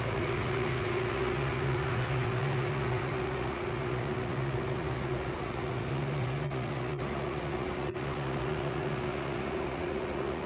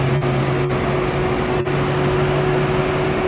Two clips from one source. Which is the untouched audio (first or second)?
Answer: second